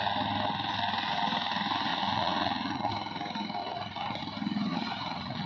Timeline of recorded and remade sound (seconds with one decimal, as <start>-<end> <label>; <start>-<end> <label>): 0.0-1.9 recorded; 1.9-2.9 remade; 2.9-3.6 recorded; 3.6-4.2 remade; 4.2-4.7 recorded; 4.7-5.5 remade